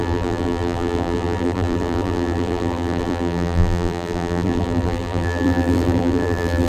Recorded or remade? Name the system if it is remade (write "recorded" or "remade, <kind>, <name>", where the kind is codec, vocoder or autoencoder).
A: remade, vocoder, BigVGAN v2